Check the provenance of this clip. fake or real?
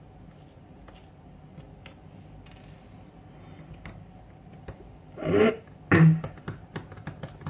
real